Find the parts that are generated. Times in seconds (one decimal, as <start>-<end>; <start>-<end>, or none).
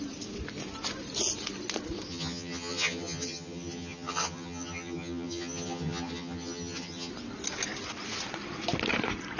2.1-7.1